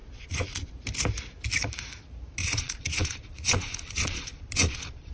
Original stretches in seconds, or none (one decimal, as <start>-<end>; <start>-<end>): 0.7-2.4